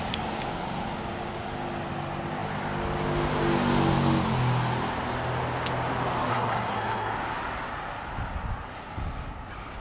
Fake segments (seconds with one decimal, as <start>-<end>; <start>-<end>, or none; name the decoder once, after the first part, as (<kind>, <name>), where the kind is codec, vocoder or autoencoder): 6.3-7.1 (codec, SNAC)